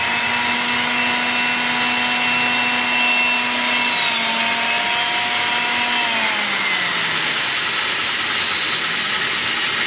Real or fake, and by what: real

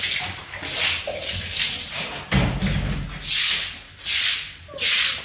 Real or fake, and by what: real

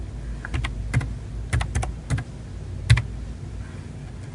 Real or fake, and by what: real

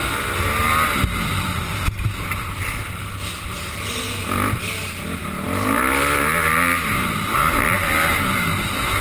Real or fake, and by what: real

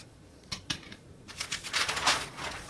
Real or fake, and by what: fake, vocoder, Vocos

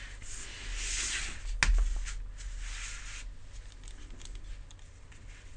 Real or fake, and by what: real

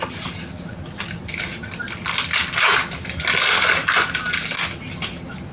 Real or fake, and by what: real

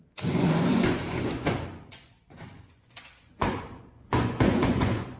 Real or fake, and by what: fake, vocoder, Vocos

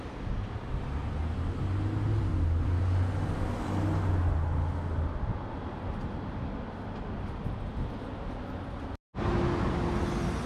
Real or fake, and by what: real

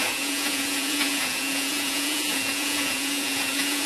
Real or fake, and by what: fake, vocoder, Vocos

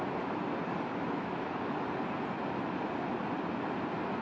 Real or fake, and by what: real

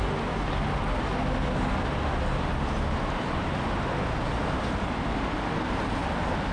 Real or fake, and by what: real